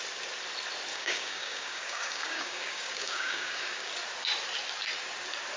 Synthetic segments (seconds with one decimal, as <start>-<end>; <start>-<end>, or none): 0.9-3.9